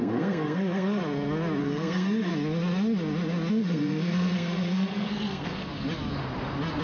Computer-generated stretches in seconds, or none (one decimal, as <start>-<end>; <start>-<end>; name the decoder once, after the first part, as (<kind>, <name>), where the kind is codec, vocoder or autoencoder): 0.0-1.0 (codec, SNAC); 1.6-2.3; 3.5-5.7